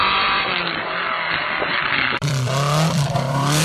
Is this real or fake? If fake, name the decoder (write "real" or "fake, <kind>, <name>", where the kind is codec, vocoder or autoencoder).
fake, vocoder, BigVGAN v2